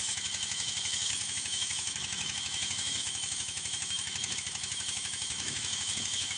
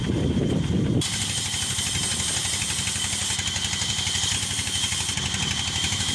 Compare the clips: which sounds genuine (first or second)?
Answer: second